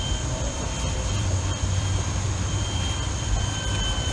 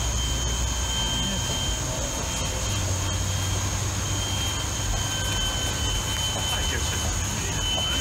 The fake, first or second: first